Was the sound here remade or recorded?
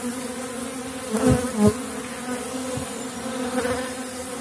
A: recorded